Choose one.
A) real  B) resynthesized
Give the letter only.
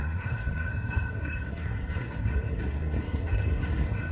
B